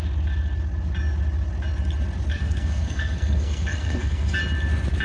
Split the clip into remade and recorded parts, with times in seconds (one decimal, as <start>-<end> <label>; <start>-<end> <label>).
0.0-2.3 recorded; 2.3-4.4 remade; 4.4-5.0 recorded